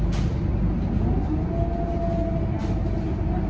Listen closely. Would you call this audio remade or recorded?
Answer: recorded